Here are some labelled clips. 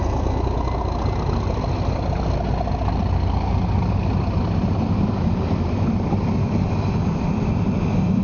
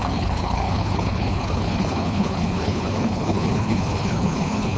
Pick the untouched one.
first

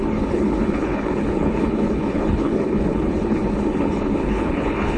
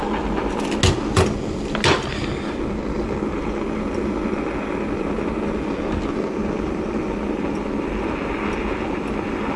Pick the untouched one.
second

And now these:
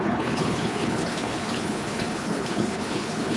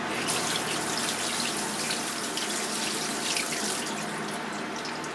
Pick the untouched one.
second